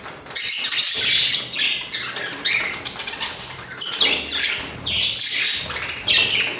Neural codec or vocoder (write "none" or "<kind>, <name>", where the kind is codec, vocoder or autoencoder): none